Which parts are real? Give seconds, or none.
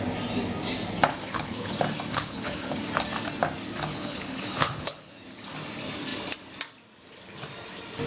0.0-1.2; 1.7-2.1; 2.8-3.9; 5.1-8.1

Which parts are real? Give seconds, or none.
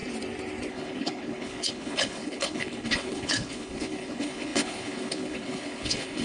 0.0-0.7